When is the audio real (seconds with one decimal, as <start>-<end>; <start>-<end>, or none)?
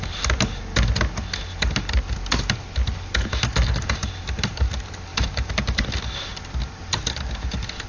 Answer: 0.0-5.1; 5.8-7.9